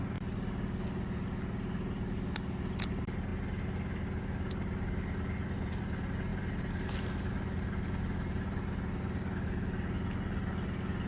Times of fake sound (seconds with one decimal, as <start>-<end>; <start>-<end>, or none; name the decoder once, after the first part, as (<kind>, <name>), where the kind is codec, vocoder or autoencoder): 6.3-6.9 (vocoder, BigVGAN v2)

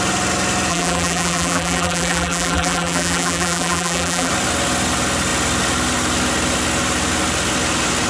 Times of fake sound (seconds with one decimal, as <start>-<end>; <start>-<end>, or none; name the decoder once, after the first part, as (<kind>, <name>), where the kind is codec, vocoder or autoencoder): 0.7-4.3 (vocoder, BigVGAN v2)

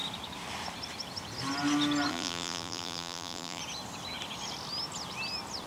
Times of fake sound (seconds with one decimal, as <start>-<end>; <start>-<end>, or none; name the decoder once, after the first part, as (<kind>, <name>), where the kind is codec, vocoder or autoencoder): 2.1-3.6 (vocoder, BigVGAN v2)

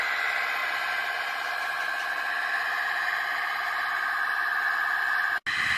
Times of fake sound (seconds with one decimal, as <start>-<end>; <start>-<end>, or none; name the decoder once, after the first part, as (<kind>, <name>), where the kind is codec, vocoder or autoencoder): none

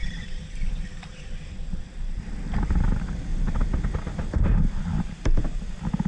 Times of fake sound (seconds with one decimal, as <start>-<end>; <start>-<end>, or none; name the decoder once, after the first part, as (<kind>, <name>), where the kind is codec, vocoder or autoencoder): 0.0-2.2 (vocoder, BigVGAN v2); 3.3-5.6